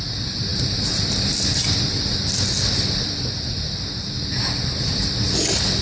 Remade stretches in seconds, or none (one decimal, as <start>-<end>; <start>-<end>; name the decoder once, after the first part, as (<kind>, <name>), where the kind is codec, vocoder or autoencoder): none